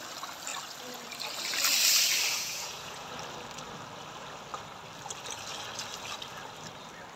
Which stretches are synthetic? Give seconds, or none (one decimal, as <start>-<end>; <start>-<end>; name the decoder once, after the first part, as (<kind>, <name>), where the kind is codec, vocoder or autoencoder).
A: 2.3-3.1 (vocoder, Vocos)